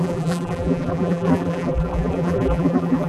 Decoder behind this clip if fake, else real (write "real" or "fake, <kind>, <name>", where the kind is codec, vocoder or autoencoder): fake, vocoder, BigVGAN v2